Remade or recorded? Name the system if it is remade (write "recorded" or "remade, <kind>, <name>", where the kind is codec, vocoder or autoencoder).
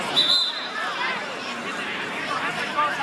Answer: remade, vocoder, BigVGAN v2